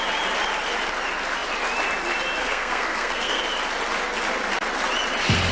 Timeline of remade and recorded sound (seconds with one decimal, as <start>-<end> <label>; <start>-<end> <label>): 0.0-2.4 recorded; 2.4-3.4 remade; 3.4-5.5 recorded